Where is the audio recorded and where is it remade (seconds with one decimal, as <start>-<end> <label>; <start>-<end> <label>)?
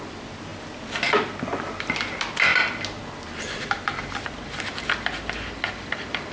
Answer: 0.0-6.3 recorded